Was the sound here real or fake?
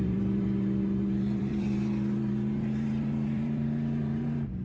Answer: fake